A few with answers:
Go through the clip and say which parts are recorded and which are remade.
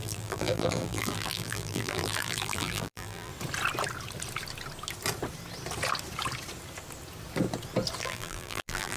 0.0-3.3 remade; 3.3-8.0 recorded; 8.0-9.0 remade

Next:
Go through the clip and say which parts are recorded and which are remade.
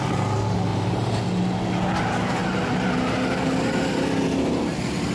0.0-0.7 recorded; 0.7-1.2 remade; 1.2-5.1 recorded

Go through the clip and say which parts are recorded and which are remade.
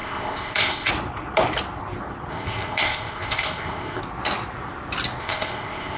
0.0-0.9 remade; 0.9-2.3 recorded; 2.3-4.0 remade; 4.0-5.2 recorded; 5.2-6.0 remade